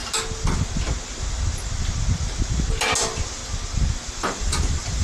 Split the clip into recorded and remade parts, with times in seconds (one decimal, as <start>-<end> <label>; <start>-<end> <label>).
0.0-3.0 recorded; 3.0-3.4 remade; 3.4-4.2 recorded; 4.2-5.0 remade